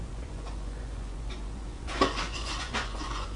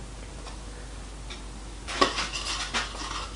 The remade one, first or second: first